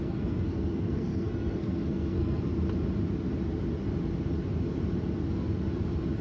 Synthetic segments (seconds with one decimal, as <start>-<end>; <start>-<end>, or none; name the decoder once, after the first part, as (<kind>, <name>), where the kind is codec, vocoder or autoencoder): 0.0-2.5 (codec, SNAC)